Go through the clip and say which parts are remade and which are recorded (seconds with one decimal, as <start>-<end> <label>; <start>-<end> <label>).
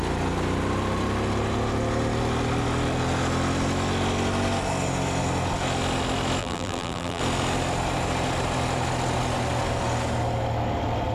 0.0-6.4 recorded; 6.4-7.2 remade; 7.2-11.1 recorded